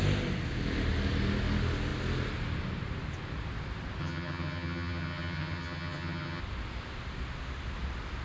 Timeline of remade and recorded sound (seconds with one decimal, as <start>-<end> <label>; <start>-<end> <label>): 0.0-4.0 recorded; 4.0-6.4 remade; 6.4-8.2 recorded